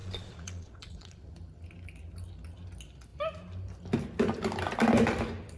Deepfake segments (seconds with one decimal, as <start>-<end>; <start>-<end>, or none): 0.0-1.3